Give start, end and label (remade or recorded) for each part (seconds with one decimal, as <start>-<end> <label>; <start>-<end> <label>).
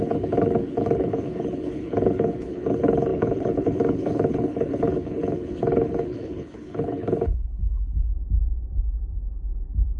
0.0-8.1 remade; 8.1-10.0 recorded